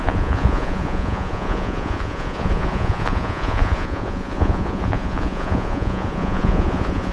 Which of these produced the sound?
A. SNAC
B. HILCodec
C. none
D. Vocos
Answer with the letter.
D